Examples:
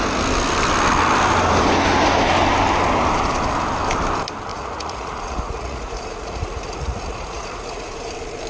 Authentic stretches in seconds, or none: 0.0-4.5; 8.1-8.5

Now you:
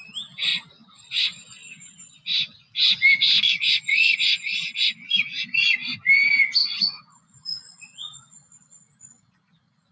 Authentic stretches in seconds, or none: 0.0-0.5; 1.1-6.6

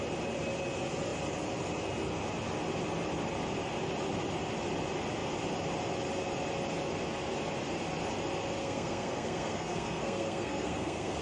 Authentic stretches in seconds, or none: 0.0-8.6